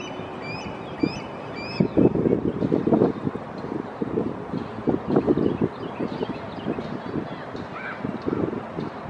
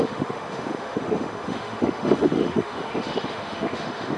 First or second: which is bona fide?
first